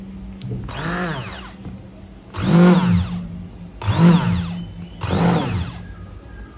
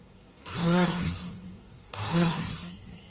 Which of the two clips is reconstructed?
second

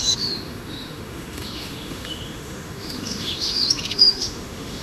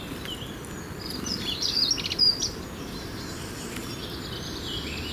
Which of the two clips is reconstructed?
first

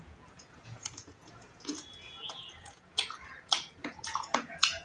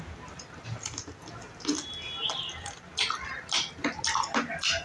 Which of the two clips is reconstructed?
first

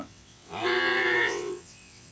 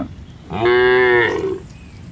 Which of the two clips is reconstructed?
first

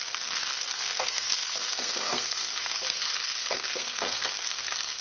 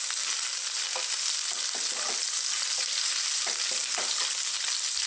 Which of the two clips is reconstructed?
first